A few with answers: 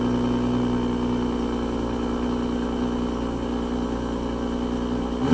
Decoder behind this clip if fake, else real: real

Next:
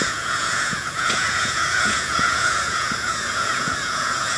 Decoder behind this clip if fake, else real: fake, vocoder, Vocos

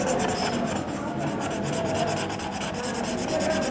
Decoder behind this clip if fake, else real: real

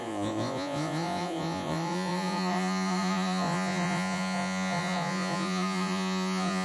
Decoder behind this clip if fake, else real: fake, vocoder, Vocos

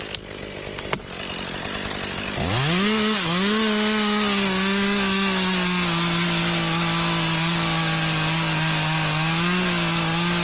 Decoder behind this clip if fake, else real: real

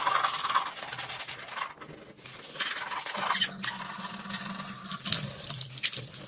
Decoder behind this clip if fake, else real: real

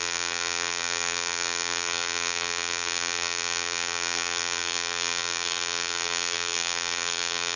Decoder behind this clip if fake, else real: fake, vocoder, BigVGAN v2